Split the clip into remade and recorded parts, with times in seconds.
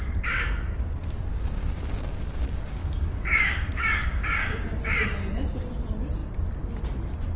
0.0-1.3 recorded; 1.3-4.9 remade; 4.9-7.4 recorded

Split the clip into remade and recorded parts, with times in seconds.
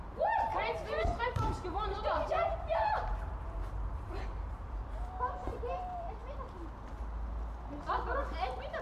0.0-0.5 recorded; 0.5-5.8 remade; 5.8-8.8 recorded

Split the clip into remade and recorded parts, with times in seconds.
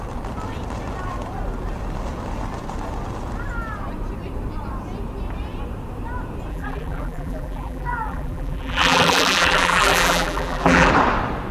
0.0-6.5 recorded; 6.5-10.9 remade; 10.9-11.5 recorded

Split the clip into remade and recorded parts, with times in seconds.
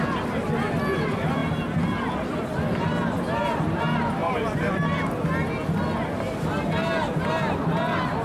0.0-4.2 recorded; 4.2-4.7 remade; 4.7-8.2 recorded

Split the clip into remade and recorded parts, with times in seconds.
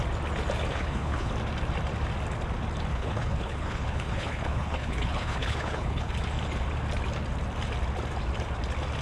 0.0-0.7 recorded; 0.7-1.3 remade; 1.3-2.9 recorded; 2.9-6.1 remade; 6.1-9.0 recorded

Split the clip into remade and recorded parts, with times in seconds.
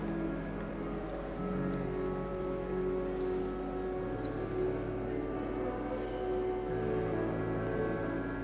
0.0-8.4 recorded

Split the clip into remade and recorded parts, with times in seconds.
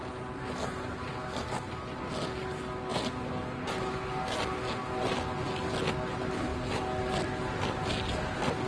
0.0-8.7 recorded